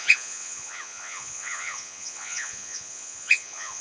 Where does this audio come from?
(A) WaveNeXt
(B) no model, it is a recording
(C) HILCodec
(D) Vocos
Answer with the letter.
D